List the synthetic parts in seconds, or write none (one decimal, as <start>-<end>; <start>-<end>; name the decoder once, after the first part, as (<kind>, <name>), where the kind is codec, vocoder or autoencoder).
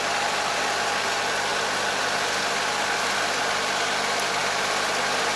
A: none